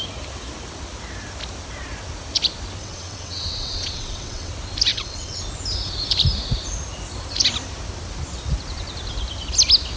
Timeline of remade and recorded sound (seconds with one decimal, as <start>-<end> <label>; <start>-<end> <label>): 0.0-2.8 recorded; 2.8-4.5 remade; 4.5-4.9 recorded; 4.9-5.4 remade; 5.4-10.0 recorded